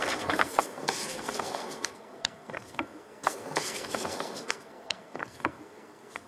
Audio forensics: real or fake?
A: fake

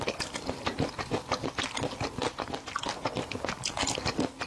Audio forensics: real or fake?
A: real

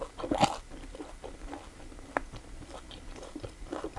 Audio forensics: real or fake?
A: real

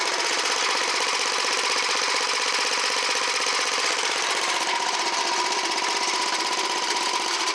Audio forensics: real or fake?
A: real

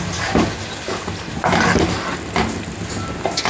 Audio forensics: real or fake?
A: real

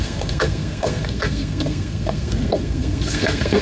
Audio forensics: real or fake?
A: fake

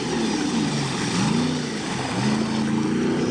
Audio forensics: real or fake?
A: real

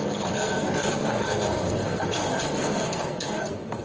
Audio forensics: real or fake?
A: fake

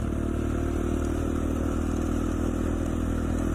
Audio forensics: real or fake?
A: real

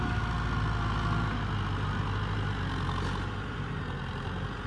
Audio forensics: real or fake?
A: real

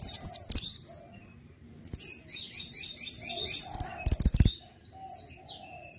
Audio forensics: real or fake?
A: real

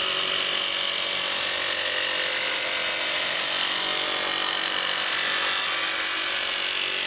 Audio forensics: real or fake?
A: real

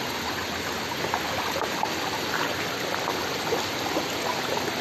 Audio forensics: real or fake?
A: real